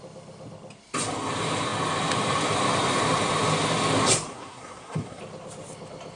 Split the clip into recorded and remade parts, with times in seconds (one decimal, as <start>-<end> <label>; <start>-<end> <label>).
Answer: 0.0-4.3 recorded; 4.3-5.2 remade; 5.2-6.2 recorded